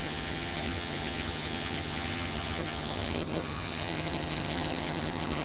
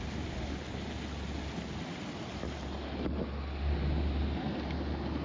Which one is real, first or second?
second